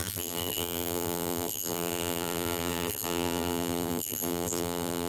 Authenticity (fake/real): fake